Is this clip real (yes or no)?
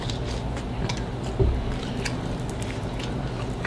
yes